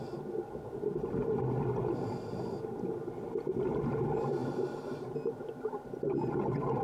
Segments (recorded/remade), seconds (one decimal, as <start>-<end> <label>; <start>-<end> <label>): 0.0-6.8 recorded